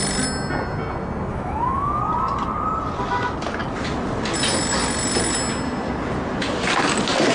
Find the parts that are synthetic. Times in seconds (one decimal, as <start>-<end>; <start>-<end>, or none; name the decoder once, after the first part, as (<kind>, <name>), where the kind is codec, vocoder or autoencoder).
1.3-2.0 (autoencoder, DAC-VAE)

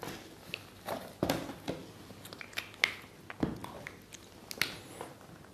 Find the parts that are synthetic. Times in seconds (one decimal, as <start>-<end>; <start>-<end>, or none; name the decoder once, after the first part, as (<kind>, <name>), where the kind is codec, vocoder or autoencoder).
none

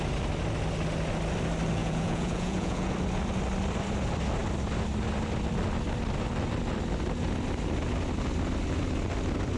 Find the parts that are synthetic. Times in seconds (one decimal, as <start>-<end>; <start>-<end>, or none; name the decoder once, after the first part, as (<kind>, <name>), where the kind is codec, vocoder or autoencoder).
1.8-2.9 (vocoder, Vocos)

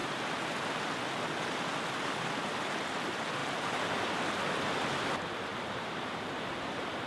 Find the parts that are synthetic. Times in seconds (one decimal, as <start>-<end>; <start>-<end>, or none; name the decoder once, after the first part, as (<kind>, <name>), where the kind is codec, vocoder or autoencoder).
3.4-4.0 (vocoder, BigVGAN v2); 5.5-6.4

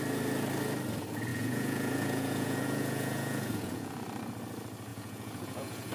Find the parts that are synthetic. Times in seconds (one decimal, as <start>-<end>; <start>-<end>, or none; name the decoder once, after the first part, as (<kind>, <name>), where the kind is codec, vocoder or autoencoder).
1.3-3.8 (vocoder, Vocos); 4.9-5.9

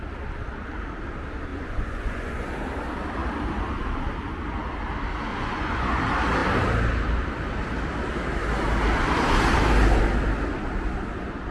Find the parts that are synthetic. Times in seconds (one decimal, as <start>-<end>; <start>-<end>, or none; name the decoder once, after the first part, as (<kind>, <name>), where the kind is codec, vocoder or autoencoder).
1.5-2.5 (vocoder, Vocos); 5.3-6.0